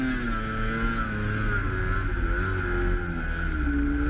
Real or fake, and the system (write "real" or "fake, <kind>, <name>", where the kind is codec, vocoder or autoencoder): real